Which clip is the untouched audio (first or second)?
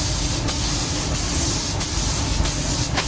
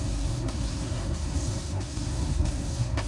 first